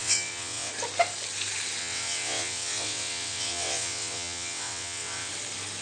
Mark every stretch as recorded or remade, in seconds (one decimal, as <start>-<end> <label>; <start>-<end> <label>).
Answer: 0.0-0.7 remade; 0.7-1.8 recorded; 1.8-5.3 remade; 5.3-5.8 recorded